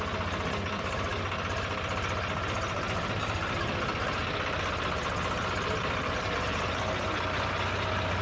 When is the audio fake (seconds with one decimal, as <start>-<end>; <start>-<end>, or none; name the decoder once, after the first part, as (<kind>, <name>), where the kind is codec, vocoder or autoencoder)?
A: none